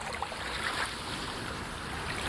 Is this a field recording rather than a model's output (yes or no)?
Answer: no